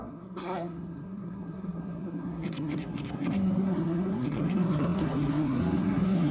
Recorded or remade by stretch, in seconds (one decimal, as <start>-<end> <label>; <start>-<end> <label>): 0.0-6.3 remade